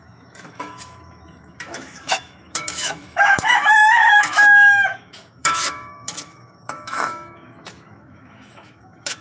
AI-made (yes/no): yes